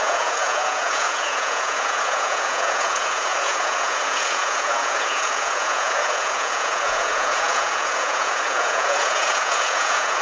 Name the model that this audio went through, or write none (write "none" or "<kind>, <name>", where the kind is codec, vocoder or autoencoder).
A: vocoder, Vocos